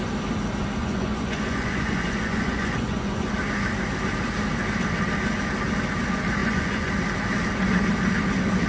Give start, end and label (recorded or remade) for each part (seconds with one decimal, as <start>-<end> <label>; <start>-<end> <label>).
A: 0.0-0.8 recorded; 0.8-3.3 remade; 3.3-6.4 recorded; 6.4-6.9 remade; 6.9-8.7 recorded